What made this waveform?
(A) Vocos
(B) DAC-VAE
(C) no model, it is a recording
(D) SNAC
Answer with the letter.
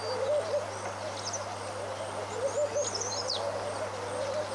C